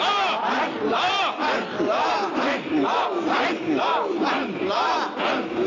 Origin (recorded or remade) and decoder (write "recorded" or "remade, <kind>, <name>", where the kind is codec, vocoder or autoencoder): remade, vocoder, BigVGAN v2